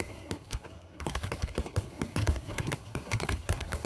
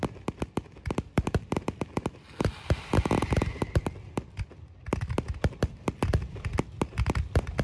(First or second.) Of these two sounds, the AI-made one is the first